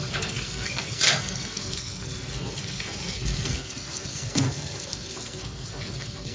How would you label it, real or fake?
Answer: fake